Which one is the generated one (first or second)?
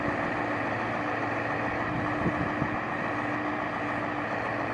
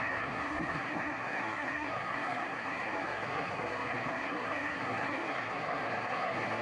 second